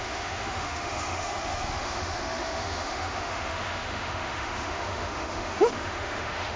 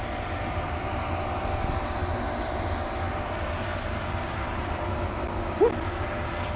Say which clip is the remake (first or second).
first